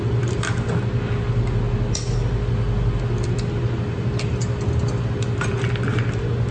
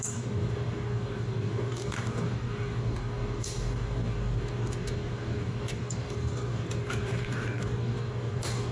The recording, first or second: first